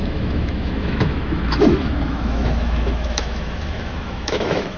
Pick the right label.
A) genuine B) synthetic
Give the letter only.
B